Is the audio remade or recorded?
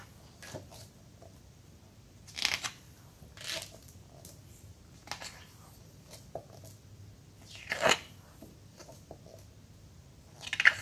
recorded